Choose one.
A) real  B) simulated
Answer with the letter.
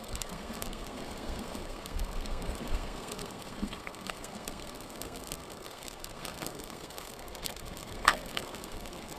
B